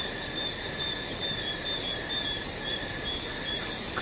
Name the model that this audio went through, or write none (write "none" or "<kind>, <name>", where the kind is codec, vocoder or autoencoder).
none